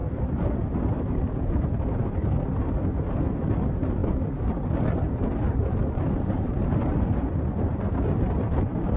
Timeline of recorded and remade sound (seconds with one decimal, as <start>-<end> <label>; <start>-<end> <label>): 0.0-9.0 remade